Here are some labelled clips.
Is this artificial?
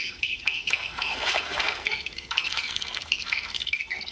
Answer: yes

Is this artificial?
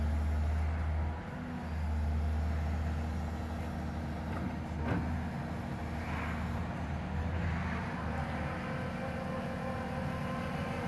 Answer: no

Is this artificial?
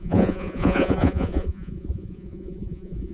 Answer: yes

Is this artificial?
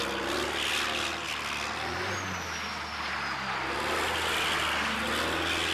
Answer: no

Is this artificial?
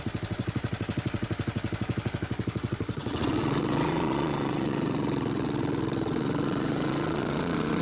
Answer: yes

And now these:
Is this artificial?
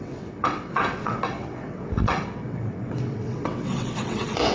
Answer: yes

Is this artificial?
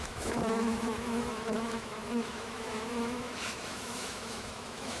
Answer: yes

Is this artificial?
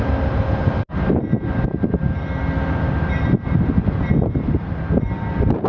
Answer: no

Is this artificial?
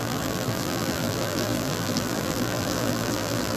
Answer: yes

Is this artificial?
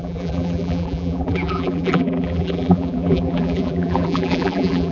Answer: yes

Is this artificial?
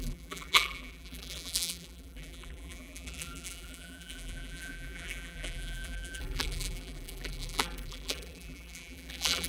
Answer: yes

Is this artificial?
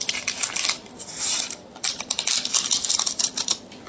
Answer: yes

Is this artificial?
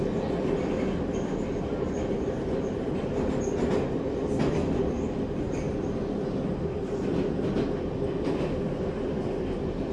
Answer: no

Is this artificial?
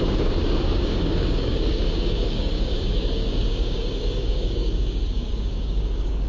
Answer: yes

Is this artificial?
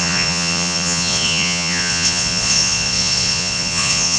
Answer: yes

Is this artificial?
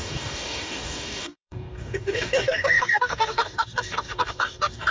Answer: yes